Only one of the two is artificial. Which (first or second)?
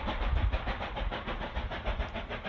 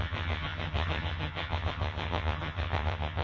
second